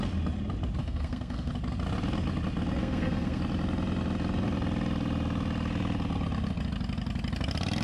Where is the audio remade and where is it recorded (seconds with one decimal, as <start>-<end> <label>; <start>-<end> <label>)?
0.0-0.8 recorded; 0.8-1.5 remade; 1.5-2.8 recorded; 2.8-3.4 remade; 3.4-7.8 recorded